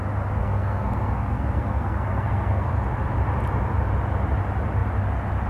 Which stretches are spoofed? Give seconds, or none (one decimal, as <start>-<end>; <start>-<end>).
0.4-2.7